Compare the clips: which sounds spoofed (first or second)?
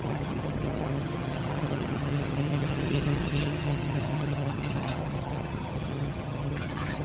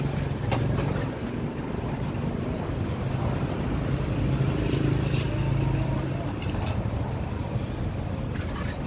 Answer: first